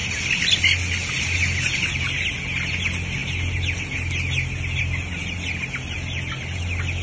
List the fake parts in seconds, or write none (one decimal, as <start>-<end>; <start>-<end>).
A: none